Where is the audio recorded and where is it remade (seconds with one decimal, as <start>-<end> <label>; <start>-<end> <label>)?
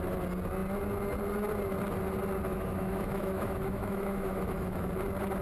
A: 0.0-2.5 recorded; 2.5-4.9 remade; 4.9-5.4 recorded